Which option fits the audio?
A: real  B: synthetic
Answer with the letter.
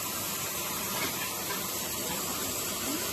B